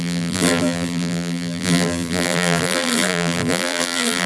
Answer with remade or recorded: remade